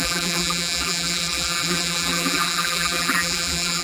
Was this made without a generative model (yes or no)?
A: no